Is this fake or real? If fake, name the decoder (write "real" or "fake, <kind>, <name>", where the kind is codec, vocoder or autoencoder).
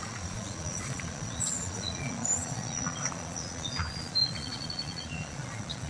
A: fake, vocoder, Vocos